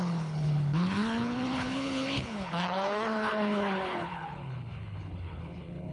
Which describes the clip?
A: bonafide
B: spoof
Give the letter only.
B